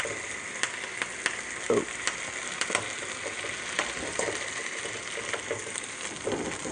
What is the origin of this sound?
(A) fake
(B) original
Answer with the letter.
B